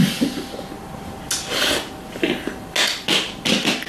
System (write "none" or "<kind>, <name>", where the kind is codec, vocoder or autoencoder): none